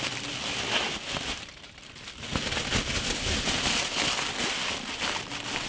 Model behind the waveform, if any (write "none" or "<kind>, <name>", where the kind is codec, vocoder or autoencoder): none